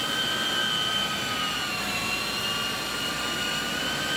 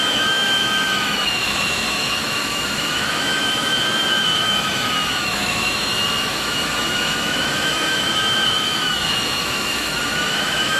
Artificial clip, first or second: second